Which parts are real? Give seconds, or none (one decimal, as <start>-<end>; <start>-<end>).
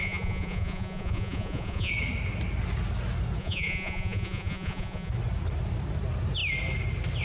1.9-3.4; 5.1-7.2